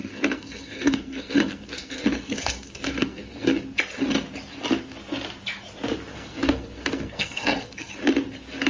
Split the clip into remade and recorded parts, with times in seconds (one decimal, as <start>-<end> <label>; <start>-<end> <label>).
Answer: 0.0-3.6 remade; 3.6-6.1 recorded; 6.1-7.9 remade; 7.9-8.7 recorded